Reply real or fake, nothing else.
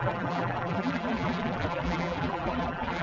fake